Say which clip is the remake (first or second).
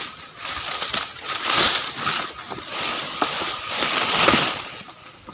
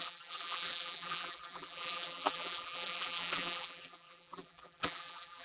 second